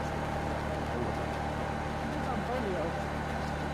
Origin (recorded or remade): recorded